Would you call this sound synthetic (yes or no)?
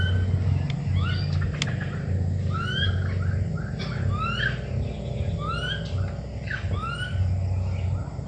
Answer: no